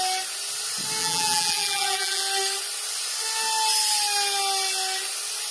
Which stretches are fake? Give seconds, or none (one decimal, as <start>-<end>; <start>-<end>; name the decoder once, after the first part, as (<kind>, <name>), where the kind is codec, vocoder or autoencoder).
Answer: 1.0-2.2 (vocoder, BigVGAN v2)